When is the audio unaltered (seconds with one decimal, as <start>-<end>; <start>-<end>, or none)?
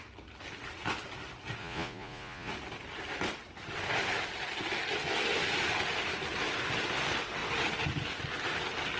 0.0-1.6; 2.5-9.0